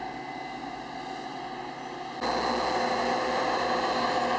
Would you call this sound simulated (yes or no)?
no